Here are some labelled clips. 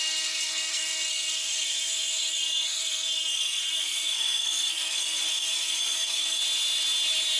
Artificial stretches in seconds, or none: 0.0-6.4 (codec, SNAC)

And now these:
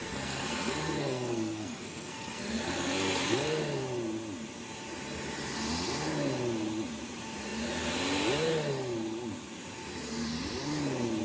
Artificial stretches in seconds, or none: 0.0-3.6 (codec, SNAC)

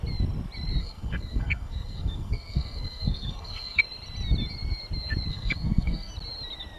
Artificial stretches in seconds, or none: 0.8-3.8 (codec, SNAC); 5.3-6.1

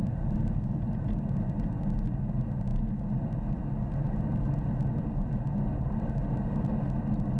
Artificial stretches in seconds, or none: none

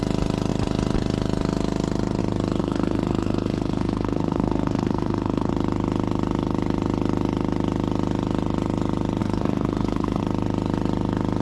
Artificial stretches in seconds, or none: 2.6-5.5 (codec, SNAC); 9.2-10.2

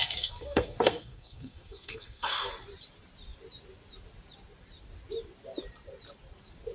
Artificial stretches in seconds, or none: 0.0-2.5 (codec, SNAC)

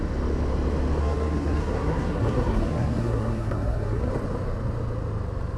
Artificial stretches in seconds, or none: 1.0-4.1 (codec, SNAC)

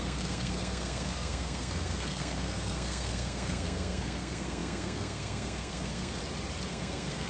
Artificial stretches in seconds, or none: 0.0-6.2 (codec, SNAC); 6.7-7.3